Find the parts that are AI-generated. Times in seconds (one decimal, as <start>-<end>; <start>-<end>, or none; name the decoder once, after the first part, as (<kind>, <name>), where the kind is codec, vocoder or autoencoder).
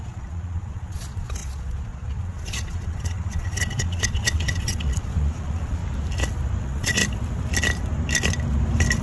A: 0.0-5.8 (vocoder, Vocos); 6.6-7.0